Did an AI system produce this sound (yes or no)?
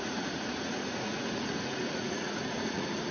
yes